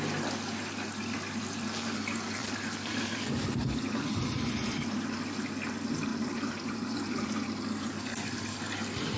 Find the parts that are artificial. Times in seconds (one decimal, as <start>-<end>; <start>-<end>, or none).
2.4-4.1; 6.1-9.2